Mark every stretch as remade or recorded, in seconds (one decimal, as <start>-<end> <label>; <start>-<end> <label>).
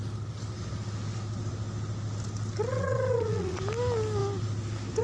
0.0-2.7 recorded; 2.7-3.6 remade; 3.6-5.0 recorded